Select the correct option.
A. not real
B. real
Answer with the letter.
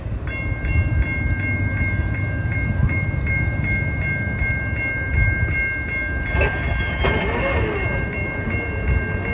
B